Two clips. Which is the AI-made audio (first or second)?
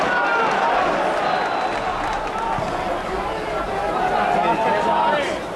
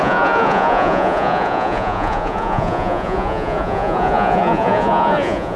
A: second